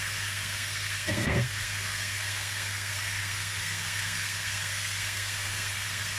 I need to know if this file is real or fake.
fake